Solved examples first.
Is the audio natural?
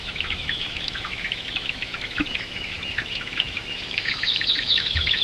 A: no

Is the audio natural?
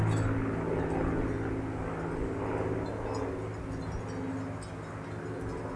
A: yes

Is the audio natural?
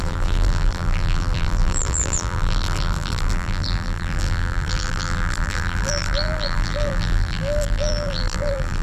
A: no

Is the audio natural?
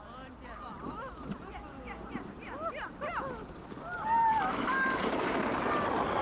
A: yes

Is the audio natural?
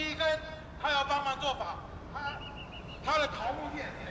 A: yes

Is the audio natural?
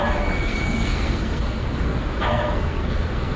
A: no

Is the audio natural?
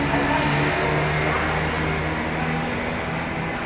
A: yes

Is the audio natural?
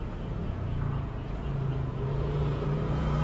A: no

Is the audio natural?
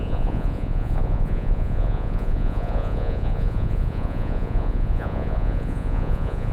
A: no